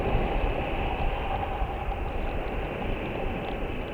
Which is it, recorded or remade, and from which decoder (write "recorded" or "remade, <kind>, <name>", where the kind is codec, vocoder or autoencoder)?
recorded